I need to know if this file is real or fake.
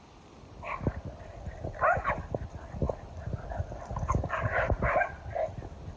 real